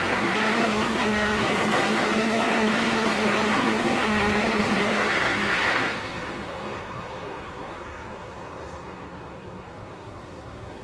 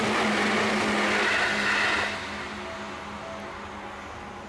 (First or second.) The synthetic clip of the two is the first